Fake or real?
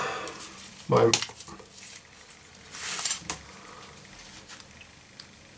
real